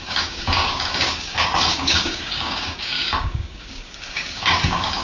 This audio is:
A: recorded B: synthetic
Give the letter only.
B